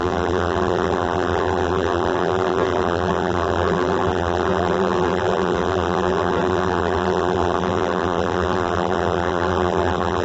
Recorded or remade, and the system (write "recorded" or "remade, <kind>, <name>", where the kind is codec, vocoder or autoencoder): remade, vocoder, BigVGAN v2